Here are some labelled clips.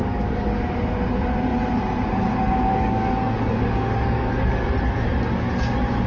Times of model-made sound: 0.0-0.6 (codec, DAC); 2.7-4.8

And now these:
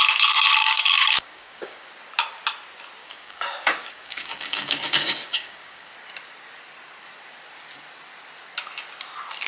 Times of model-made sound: 0.6-1.9 (codec, DAC); 3.0-5.9

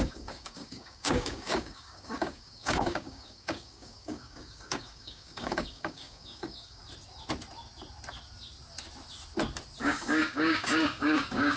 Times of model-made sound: 0.0-6.8 (codec, DAC); 9.8-11.6